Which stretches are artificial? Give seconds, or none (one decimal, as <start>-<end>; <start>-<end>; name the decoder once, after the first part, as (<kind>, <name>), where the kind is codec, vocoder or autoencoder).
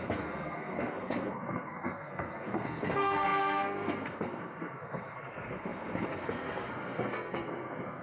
0.0-8.0 (codec, SNAC)